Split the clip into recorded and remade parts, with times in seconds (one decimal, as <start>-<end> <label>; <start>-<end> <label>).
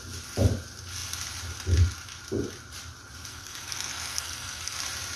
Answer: 0.0-3.3 recorded; 3.3-4.8 remade; 4.8-5.2 recorded